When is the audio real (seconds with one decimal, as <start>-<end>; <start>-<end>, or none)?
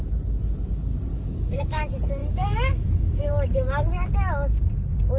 0.0-1.1; 1.8-2.2; 3.3-5.2